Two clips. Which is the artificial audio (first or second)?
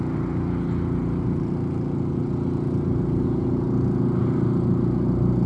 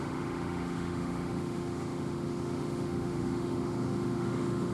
second